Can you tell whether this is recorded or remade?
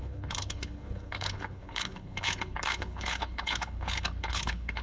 remade